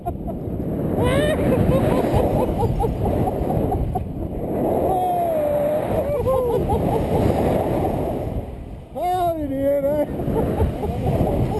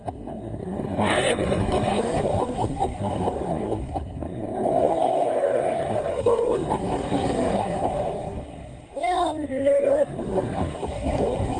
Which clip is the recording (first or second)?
first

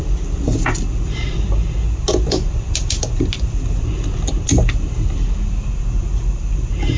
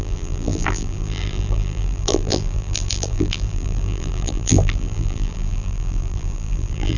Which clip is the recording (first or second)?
first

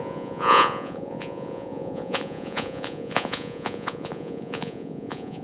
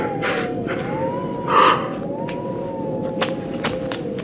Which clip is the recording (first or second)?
second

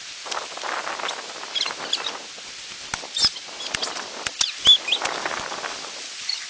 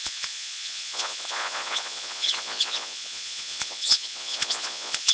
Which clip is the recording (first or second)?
first